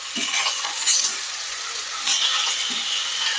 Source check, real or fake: fake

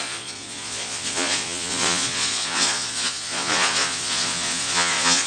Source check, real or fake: fake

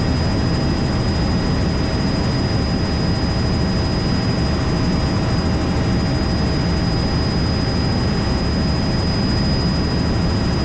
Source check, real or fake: real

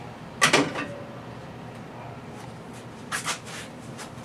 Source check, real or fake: real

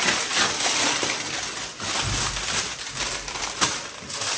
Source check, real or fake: real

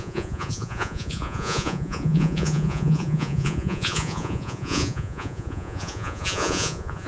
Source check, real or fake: fake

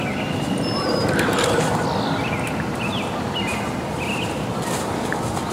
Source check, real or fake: real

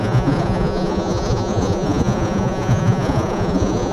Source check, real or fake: fake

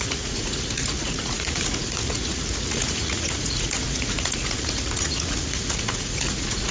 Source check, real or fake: fake